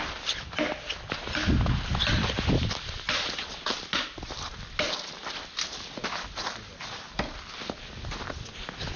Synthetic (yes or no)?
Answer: no